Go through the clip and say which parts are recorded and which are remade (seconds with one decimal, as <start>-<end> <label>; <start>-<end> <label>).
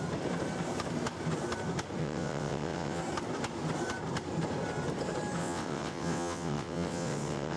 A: 0.0-2.0 recorded; 2.0-3.0 remade; 3.0-5.4 recorded; 5.4-7.6 remade